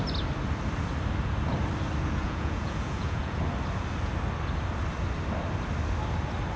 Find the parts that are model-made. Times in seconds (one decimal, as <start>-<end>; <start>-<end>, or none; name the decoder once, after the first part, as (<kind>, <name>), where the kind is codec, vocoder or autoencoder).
2.2-3.4 (vocoder, Vocos)